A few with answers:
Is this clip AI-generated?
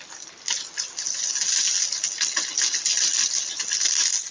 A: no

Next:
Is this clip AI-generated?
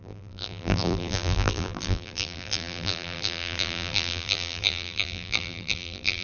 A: yes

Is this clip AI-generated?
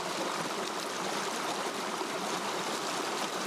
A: no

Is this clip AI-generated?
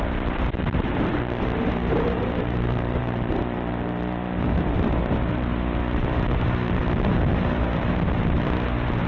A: yes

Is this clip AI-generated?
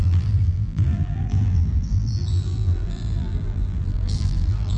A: yes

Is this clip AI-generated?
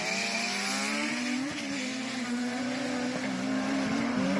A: yes